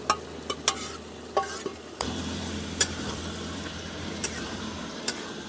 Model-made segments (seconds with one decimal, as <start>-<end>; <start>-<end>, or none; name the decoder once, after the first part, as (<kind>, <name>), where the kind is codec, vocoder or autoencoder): 1.7-5.0 (vocoder, BigVGAN v2)